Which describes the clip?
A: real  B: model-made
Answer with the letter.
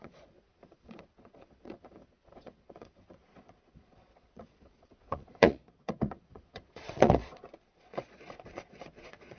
B